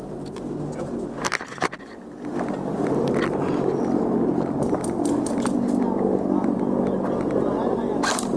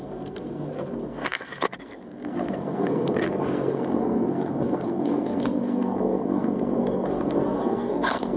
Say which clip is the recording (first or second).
first